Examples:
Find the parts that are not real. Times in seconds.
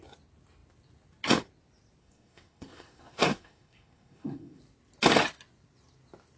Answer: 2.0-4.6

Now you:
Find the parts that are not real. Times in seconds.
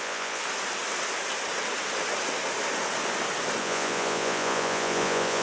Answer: 0.0-0.4; 3.6-5.4